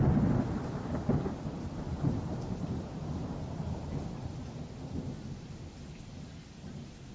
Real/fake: real